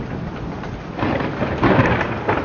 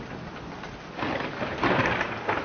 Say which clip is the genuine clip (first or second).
second